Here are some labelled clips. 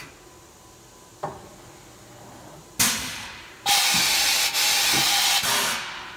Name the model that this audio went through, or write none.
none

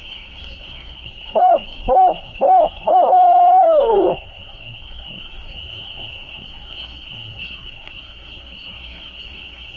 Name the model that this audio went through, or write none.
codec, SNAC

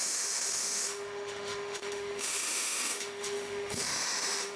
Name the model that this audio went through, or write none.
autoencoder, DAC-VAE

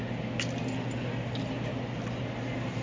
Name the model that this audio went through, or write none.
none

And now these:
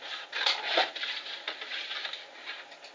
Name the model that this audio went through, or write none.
none